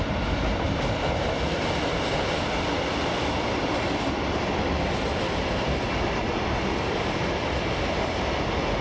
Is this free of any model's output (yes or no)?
yes